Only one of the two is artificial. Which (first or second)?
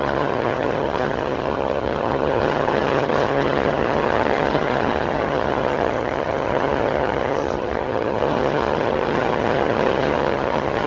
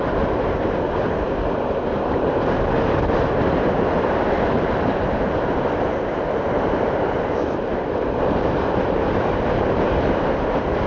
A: first